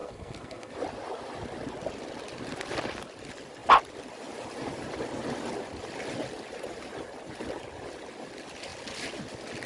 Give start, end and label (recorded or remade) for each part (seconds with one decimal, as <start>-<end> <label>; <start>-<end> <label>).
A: 0.0-0.7 remade; 0.7-9.7 recorded